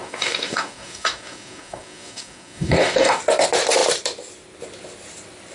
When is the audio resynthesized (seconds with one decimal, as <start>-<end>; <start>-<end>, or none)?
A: 0.0-3.2